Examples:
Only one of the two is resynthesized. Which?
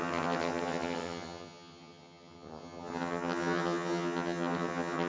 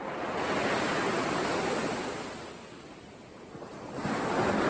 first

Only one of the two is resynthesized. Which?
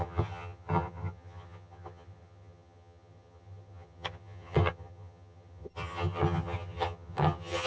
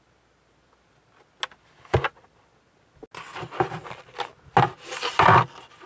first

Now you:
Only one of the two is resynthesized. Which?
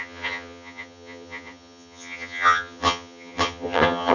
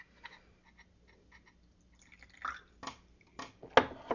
first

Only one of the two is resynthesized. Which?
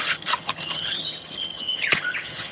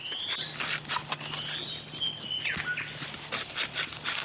first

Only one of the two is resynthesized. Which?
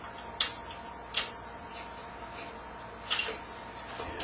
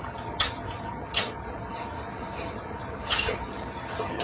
second